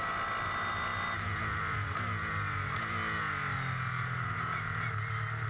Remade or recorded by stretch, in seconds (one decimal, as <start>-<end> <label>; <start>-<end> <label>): 0.0-5.5 recorded